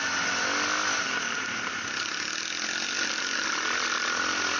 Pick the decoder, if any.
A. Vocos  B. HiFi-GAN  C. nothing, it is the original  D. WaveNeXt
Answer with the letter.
C